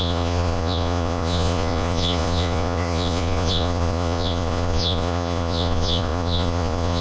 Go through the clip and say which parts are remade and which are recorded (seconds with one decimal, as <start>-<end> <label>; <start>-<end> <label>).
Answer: 0.0-7.0 remade